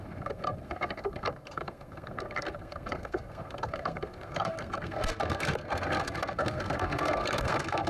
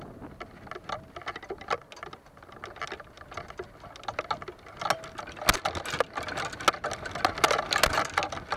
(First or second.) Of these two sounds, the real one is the second